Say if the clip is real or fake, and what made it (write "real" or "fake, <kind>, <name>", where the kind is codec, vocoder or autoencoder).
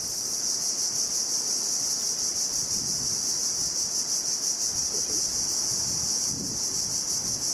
real